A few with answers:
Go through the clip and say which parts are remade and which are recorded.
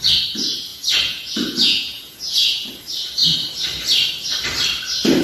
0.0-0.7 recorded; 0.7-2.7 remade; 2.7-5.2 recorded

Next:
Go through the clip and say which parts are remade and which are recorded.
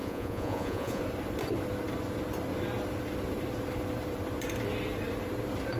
0.0-1.0 remade; 1.0-5.8 recorded